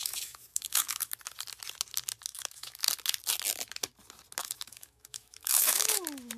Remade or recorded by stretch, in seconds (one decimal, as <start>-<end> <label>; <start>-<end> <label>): 0.0-1.1 remade; 1.1-2.3 recorded; 2.3-2.8 remade; 2.8-4.4 recorded; 4.4-6.0 remade; 6.0-6.4 recorded